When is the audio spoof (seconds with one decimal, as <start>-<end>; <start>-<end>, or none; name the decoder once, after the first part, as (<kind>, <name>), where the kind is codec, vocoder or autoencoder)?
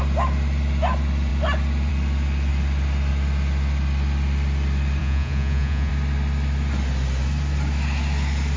5.0-5.9 (vocoder, Vocos)